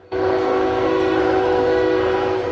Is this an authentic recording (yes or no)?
no